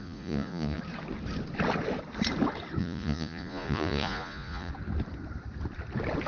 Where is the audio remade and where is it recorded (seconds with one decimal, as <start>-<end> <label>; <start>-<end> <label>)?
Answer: 0.0-0.8 remade; 0.8-2.8 recorded; 2.8-4.7 remade; 4.7-6.3 recorded